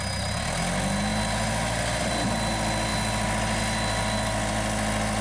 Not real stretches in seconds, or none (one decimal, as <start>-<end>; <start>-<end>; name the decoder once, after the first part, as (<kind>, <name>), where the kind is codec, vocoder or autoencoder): none

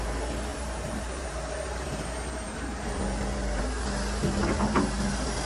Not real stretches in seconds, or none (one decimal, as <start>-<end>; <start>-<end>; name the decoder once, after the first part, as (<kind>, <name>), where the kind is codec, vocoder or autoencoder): 0.5-3.6 (vocoder, BigVGAN v2)